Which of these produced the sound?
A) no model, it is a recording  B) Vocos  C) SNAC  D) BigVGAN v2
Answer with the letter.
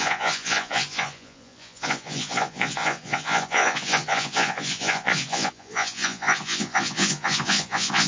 B